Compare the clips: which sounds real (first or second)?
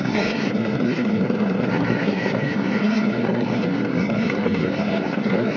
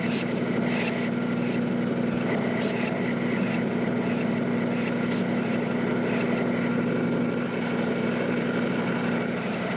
second